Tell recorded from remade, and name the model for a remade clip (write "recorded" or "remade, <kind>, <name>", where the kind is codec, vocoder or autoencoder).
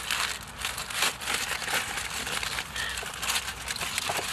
recorded